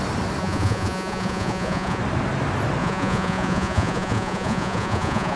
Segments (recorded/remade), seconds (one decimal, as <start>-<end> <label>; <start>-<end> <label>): 0.0-0.4 recorded; 0.4-2.0 remade; 2.0-2.8 recorded; 2.8-5.4 remade